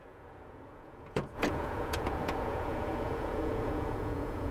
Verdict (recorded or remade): remade